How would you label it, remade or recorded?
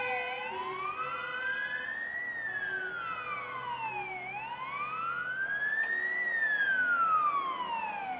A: recorded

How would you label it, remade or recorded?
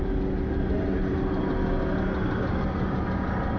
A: recorded